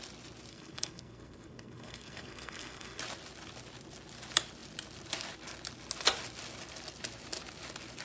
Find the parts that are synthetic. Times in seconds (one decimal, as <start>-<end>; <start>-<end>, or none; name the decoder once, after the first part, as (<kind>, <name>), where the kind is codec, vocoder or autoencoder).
0.5-3.0 (codec, SNAC)